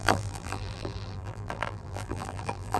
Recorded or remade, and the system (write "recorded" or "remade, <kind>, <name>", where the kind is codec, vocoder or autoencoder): remade, vocoder, BigVGAN v2